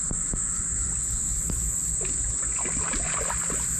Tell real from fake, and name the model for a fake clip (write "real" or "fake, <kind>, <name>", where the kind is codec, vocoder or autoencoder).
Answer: real